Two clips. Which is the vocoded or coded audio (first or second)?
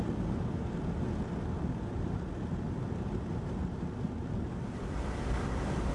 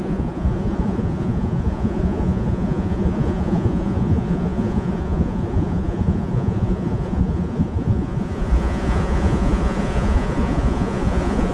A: second